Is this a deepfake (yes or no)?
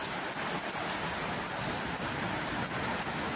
no